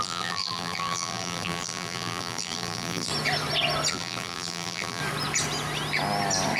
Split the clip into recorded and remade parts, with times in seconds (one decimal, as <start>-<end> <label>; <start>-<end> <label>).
0.0-3.1 remade; 3.1-3.9 recorded; 3.9-5.0 remade; 5.0-6.6 recorded